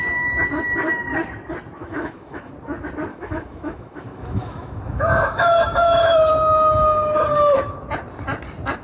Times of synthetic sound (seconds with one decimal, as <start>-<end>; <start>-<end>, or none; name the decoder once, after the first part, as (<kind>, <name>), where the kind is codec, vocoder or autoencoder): 1.8-2.5 (autoencoder, DAC-VAE); 3.1-6.3